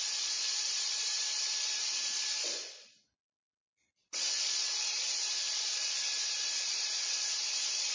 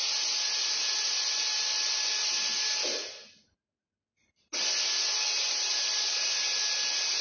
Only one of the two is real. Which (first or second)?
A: second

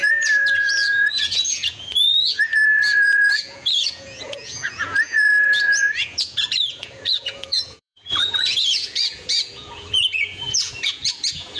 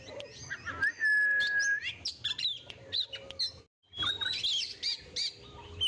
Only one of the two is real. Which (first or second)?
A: second